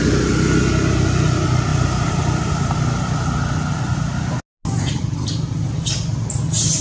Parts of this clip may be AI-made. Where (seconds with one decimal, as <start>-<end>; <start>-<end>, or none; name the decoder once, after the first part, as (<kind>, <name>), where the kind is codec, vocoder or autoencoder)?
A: 1.7-2.7 (vocoder, BigVGAN v2)